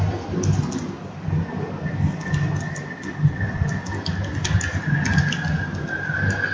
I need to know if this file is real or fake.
real